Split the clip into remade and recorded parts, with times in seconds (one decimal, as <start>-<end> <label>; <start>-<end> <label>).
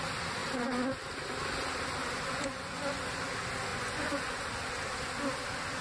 0.0-2.3 recorded; 2.3-3.0 remade; 3.0-3.7 recorded; 3.7-4.4 remade; 4.4-5.8 recorded